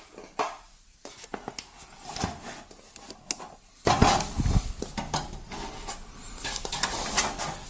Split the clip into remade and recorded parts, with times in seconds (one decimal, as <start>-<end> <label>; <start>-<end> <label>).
0.0-7.7 recorded

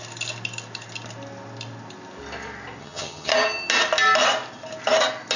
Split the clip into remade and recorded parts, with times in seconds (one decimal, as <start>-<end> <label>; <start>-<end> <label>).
0.0-2.8 recorded; 2.8-3.3 remade; 3.3-5.4 recorded

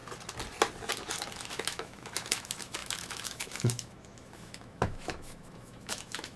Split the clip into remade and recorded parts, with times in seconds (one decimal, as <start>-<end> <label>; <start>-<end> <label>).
0.0-1.3 recorded; 1.3-6.4 remade

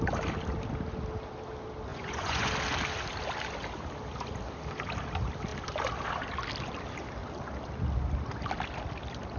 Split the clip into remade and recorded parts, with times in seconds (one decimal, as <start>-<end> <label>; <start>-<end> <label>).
0.0-1.9 recorded; 1.9-2.5 remade; 2.5-9.4 recorded

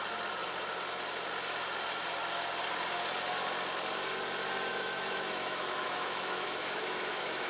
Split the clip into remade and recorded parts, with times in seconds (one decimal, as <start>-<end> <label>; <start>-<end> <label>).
0.0-4.7 recorded; 4.7-7.5 remade

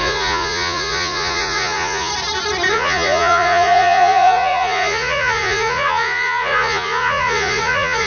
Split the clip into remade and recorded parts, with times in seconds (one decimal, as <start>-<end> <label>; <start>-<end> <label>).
0.0-2.1 remade; 2.1-2.7 recorded; 2.7-8.1 remade

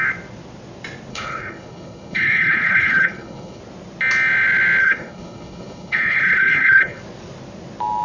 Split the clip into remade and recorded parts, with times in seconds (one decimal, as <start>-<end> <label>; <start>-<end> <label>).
0.0-1.1 recorded; 1.1-3.6 remade; 3.6-4.8 recorded; 4.8-7.0 remade; 7.0-8.0 recorded

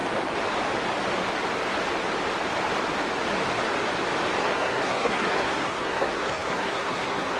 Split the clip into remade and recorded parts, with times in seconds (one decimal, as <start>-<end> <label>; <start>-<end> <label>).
0.0-4.4 recorded; 4.4-7.4 remade